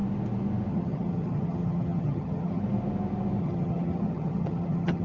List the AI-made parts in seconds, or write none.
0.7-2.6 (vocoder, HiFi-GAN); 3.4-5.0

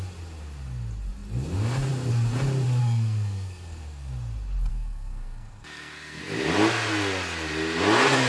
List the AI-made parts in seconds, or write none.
2.8-4.1 (codec, SNAC); 4.7-6.2